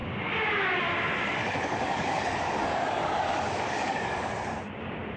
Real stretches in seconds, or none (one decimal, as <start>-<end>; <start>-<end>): 0.0-1.4; 4.3-5.2